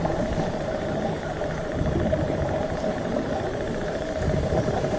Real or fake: fake